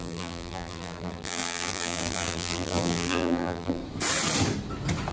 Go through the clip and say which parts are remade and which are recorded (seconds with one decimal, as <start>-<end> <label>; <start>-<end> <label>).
0.0-3.8 remade; 3.8-5.1 recorded